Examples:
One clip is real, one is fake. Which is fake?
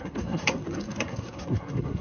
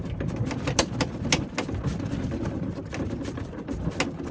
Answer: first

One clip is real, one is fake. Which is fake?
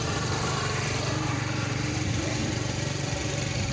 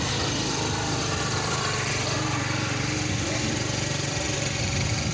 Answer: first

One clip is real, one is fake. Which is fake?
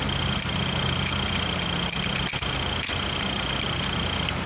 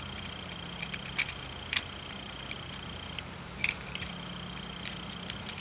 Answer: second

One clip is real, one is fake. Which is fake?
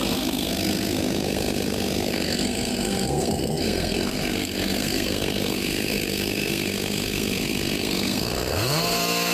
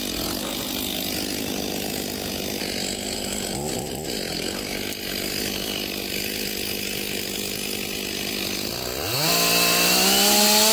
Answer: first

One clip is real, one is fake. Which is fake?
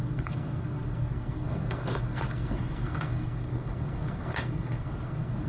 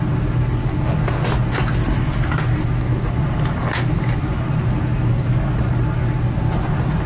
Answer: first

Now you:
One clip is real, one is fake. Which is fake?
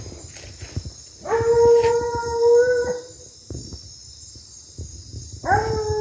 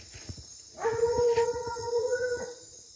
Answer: second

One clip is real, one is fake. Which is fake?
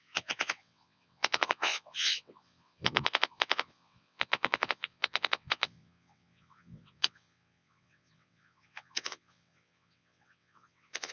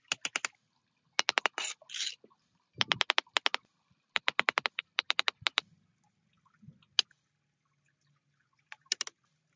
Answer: first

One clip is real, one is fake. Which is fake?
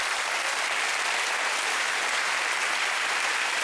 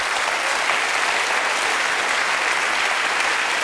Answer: first